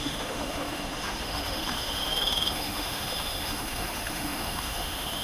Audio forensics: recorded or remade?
remade